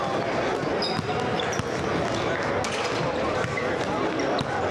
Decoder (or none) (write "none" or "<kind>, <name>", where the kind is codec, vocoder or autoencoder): none